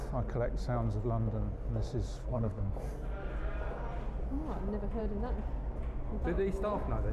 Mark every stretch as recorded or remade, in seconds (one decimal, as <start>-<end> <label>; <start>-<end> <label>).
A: 0.0-2.2 recorded; 2.2-2.8 remade; 2.8-7.1 recorded